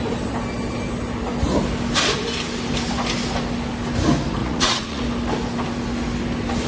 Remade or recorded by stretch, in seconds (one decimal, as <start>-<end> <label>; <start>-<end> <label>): 0.0-4.4 recorded; 4.4-5.0 remade; 5.0-6.7 recorded